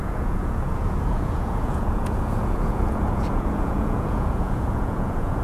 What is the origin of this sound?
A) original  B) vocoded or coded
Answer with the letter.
B